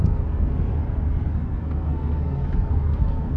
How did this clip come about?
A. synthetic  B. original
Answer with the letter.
A